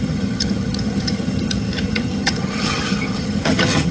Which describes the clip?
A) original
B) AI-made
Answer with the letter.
B